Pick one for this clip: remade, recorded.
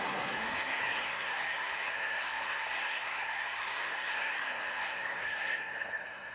remade